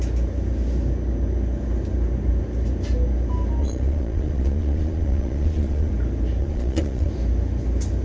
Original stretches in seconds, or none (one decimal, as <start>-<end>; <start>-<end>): 0.0-3.6; 5.9-6.4; 7.1-8.0